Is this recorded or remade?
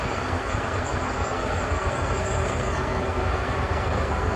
remade